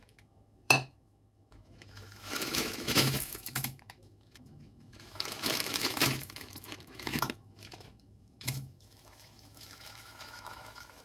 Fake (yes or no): yes